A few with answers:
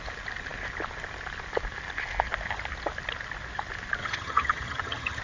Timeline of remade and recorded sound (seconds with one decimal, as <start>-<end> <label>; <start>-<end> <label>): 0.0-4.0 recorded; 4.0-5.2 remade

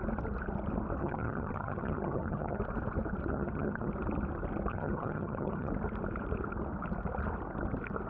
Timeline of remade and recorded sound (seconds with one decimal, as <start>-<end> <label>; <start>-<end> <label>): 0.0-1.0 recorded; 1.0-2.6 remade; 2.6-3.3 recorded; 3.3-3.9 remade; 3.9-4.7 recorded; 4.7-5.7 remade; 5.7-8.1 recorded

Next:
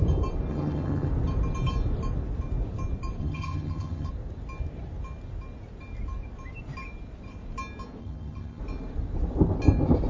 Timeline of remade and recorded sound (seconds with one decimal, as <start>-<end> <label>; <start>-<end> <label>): 0.0-0.5 recorded; 0.5-1.1 remade; 1.1-3.2 recorded; 3.2-4.1 remade; 4.1-8.0 recorded; 8.0-8.6 remade; 8.6-10.1 recorded

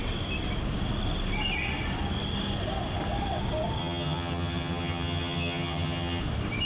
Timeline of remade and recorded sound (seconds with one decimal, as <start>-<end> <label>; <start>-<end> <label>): 0.0-3.8 recorded; 3.8-6.2 remade; 6.2-6.7 recorded

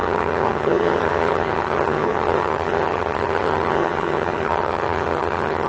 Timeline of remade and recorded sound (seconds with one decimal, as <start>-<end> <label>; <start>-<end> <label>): 0.0-5.7 remade

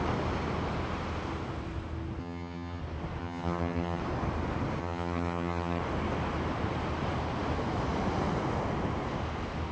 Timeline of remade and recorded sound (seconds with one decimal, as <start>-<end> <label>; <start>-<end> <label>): 0.0-2.2 recorded; 2.2-2.8 remade; 2.8-3.2 recorded; 3.2-4.0 remade; 4.0-4.8 recorded; 4.8-5.8 remade; 5.8-9.7 recorded

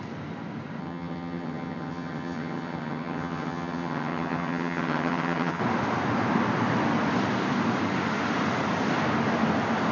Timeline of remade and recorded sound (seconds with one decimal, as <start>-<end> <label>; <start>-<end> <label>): 0.0-0.8 recorded; 0.8-5.6 remade; 5.6-9.9 recorded

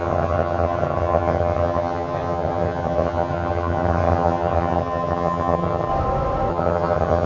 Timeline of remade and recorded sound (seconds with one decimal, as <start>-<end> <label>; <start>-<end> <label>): 0.0-5.9 remade; 5.9-6.5 recorded; 6.5-7.3 remade